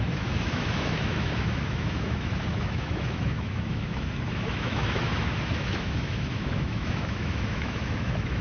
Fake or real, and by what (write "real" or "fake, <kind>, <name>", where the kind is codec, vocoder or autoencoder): fake, autoencoder, DAC-VAE